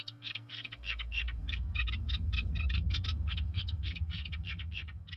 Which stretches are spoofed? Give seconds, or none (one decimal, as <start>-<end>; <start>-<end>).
0.0-5.2